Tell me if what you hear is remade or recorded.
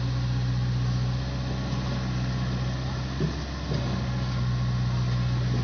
recorded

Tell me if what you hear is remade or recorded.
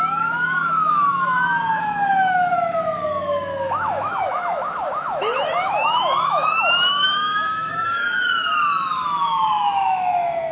remade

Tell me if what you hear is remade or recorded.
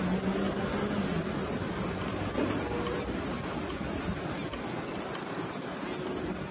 recorded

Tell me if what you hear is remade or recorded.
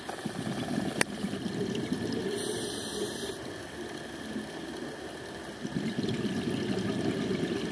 recorded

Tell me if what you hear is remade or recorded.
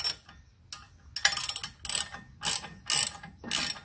recorded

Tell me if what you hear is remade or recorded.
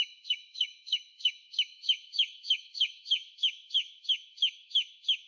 remade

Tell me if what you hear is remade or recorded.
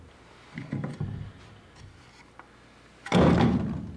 recorded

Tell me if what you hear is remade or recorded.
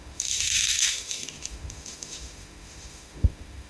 remade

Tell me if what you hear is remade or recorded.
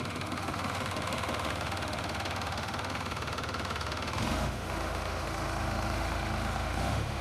remade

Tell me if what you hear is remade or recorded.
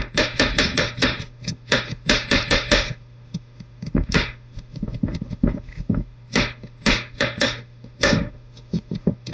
remade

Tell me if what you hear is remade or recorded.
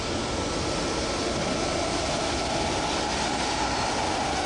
recorded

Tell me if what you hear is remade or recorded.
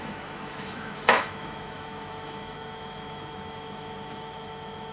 remade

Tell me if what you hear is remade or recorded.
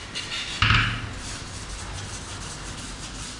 recorded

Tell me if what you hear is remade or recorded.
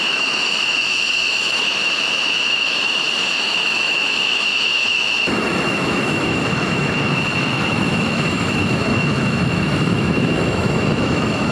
remade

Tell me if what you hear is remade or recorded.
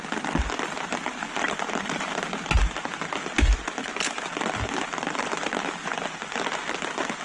recorded